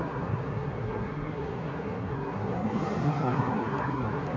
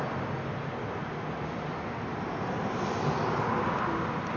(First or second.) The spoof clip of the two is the first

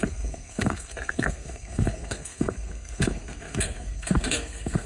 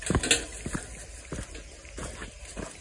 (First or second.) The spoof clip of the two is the first